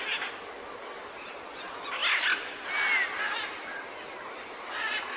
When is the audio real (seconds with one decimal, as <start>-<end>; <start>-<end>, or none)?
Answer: 0.0-5.2